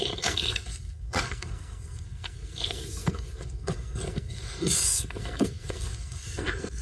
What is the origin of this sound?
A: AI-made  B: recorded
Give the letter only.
A